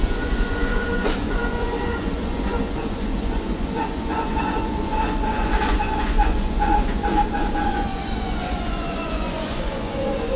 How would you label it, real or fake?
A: fake